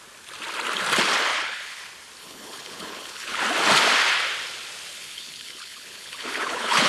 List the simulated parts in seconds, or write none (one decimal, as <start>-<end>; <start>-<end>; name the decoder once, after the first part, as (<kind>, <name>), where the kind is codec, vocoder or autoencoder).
1.3-1.8 (codec, HILCodec); 2.2-3.4; 4.9-6.9